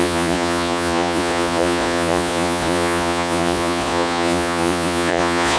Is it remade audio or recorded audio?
remade